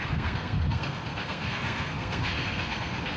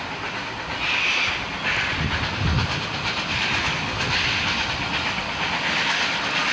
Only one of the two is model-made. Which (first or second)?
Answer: first